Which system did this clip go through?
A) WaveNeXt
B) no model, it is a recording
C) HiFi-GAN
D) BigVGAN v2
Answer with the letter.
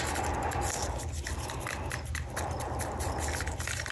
B